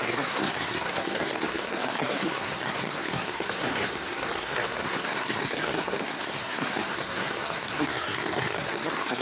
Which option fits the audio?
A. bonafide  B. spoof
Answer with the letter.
B